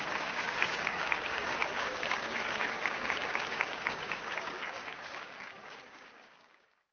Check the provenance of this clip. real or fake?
fake